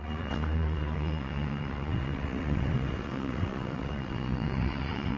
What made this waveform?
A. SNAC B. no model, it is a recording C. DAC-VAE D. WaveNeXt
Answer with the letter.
D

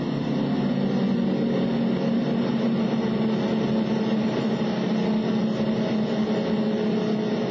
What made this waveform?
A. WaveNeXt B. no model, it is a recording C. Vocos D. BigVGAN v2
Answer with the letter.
B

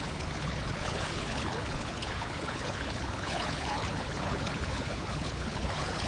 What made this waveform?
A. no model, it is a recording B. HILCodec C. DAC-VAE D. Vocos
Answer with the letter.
B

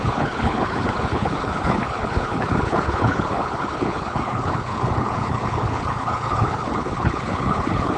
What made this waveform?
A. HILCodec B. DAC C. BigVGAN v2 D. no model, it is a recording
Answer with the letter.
A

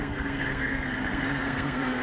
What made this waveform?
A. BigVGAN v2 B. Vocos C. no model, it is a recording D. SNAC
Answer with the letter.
D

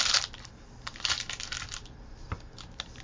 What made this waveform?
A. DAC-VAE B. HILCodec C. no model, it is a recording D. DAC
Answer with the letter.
C